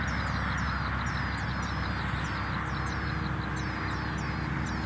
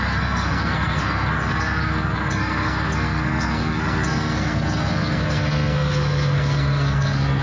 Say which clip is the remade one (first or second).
second